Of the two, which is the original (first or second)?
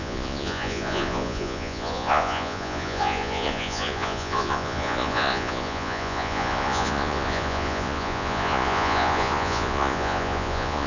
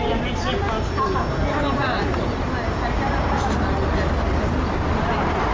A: second